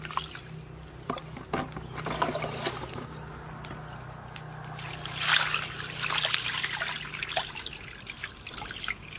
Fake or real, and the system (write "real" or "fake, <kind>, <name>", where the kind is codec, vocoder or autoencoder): real